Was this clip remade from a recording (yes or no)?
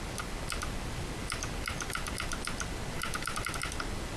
no